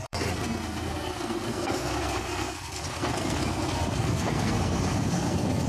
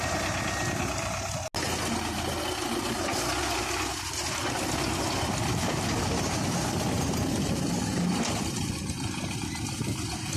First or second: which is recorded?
second